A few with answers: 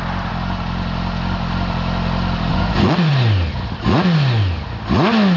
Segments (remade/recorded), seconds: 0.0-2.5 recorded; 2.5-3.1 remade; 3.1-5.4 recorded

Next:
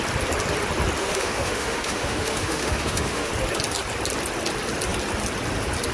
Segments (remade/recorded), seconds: 0.0-1.0 recorded; 1.0-3.3 remade; 3.3-5.9 recorded

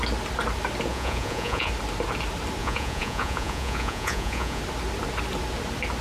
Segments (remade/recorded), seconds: 0.0-0.9 recorded; 0.9-1.7 remade; 1.7-2.6 recorded; 2.6-4.6 remade; 4.6-6.0 recorded